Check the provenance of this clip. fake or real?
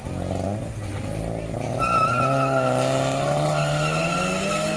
real